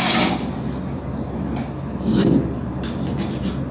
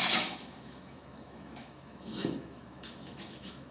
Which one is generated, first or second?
second